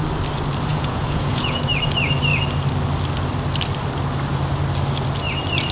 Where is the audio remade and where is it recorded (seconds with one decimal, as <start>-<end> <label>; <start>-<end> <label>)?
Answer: 0.0-0.7 recorded; 0.7-1.6 remade; 1.6-5.7 recorded